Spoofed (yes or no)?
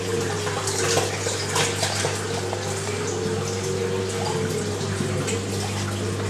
no